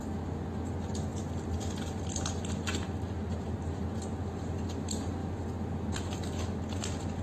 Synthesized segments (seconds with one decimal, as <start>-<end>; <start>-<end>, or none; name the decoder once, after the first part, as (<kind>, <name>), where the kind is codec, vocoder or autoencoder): none